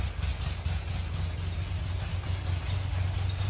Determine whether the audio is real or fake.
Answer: real